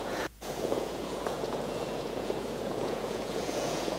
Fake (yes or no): yes